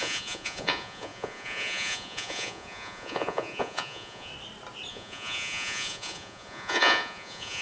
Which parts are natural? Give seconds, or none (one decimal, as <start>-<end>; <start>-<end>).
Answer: 4.3-4.9